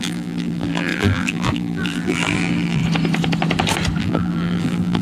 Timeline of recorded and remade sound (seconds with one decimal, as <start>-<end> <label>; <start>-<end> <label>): 0.0-2.8 remade; 2.8-4.0 recorded; 4.0-5.0 remade